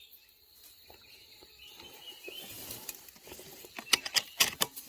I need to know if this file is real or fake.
real